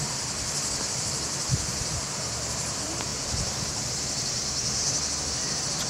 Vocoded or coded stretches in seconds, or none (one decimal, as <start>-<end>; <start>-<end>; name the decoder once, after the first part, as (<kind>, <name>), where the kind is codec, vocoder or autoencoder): 0.0-4.4 (vocoder, BigVGAN v2); 5.4-5.9